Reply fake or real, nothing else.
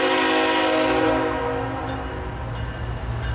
real